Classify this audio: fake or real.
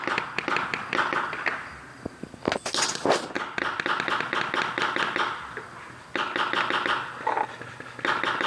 real